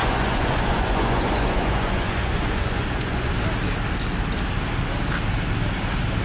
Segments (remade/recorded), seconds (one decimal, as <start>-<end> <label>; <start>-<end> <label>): 0.0-3.3 remade; 3.3-6.2 recorded